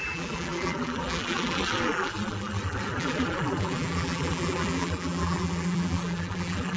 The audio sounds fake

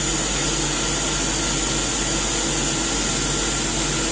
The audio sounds real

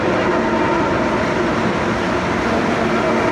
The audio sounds real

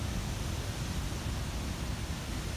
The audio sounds real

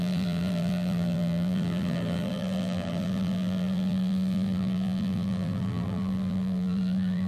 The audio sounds fake